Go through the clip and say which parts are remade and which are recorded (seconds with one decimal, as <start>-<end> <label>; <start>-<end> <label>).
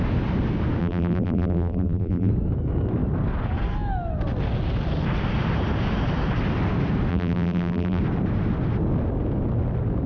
0.0-0.8 recorded; 0.8-2.3 remade; 2.3-7.1 recorded; 7.1-8.0 remade; 8.0-10.1 recorded